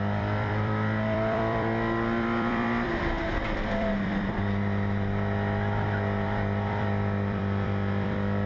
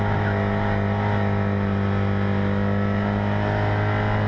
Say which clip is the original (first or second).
second